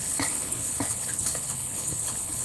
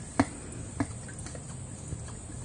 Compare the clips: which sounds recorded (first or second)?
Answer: second